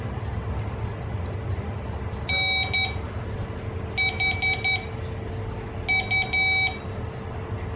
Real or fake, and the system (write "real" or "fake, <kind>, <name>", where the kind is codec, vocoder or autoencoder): real